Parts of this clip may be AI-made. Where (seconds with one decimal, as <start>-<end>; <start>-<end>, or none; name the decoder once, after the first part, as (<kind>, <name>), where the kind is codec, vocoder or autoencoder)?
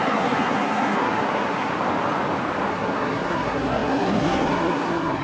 0.0-1.7 (codec, SNAC); 2.7-5.2